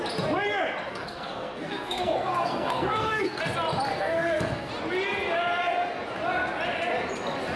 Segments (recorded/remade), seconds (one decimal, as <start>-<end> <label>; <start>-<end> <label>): 0.0-0.9 recorded; 0.9-3.4 remade; 3.4-3.9 recorded; 3.9-4.7 remade; 4.7-7.6 recorded